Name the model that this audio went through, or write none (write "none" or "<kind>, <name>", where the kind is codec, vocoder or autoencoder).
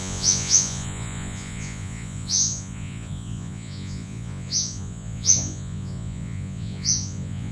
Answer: vocoder, Vocos